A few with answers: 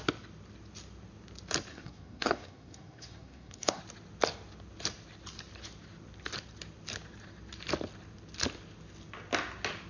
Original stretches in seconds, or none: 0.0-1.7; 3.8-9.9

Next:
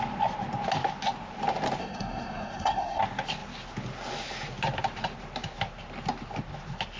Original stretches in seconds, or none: 0.0-1.8; 3.0-7.0

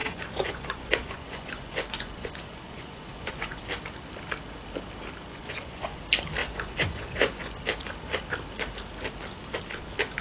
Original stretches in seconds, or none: 3.6-5.3; 6.0-6.4; 7.6-10.2

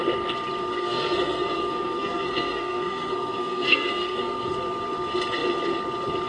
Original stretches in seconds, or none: 0.0-0.7; 4.5-6.3

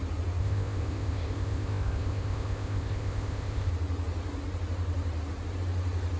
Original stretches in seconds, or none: 0.0-0.4; 3.7-6.2

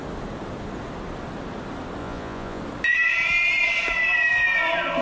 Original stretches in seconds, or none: 0.0-2.0; 2.6-5.0

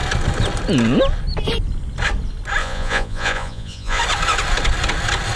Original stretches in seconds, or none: 0.0-2.6; 4.0-5.4